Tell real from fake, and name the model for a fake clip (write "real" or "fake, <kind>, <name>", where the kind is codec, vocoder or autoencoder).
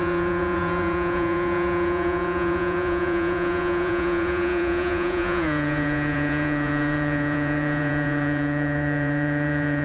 fake, vocoder, Vocos